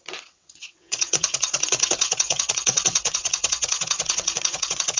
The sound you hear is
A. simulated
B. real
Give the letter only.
A